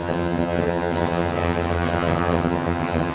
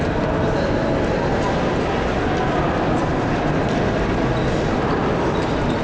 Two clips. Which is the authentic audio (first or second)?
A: second